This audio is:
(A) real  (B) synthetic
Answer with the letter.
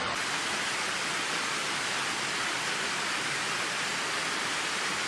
A